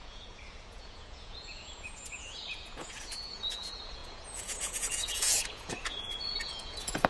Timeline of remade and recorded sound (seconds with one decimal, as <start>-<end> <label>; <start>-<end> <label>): 0.0-7.1 remade

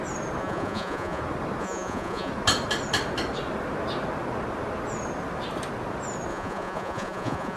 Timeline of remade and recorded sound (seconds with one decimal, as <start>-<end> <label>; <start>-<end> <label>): 0.0-0.4 recorded; 0.4-1.2 remade; 1.2-1.6 recorded; 1.6-2.3 remade; 2.3-6.3 recorded; 6.3-7.6 remade

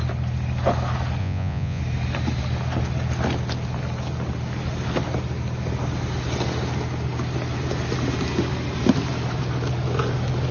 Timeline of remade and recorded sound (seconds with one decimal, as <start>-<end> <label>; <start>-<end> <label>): 0.0-1.2 recorded; 1.2-1.8 remade; 1.8-10.5 recorded

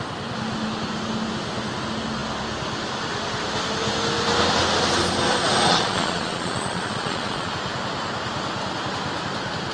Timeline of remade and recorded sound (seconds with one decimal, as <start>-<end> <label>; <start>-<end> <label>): 0.0-5.7 recorded; 5.7-7.5 remade; 7.5-9.7 recorded

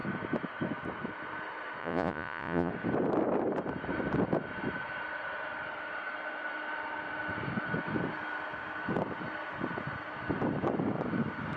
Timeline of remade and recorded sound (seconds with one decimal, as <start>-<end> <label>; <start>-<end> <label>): 0.0-1.8 recorded; 1.8-2.7 remade; 2.7-11.6 recorded

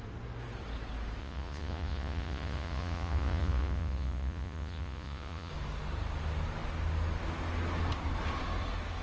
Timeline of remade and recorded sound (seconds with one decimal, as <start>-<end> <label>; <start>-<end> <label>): 0.0-1.2 recorded; 1.2-5.5 remade; 5.5-9.0 recorded

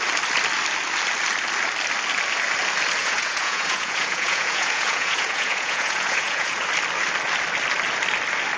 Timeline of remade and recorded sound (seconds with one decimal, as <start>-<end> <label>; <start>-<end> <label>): 0.0-3.0 recorded; 3.0-6.6 remade; 6.6-8.6 recorded